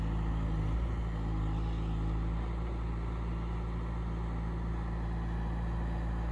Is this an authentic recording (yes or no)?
yes